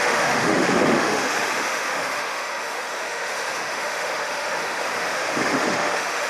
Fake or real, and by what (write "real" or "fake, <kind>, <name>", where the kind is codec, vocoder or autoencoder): fake, autoencoder, DAC-VAE